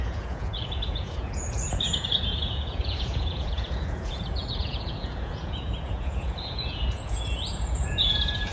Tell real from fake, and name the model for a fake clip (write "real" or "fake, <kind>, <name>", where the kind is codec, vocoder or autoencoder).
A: fake, vocoder, Vocos